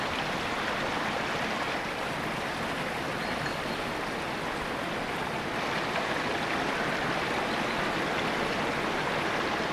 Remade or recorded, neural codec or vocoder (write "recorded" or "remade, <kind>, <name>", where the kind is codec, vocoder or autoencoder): recorded